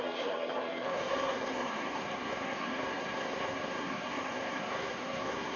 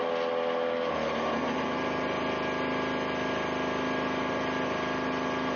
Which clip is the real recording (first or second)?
second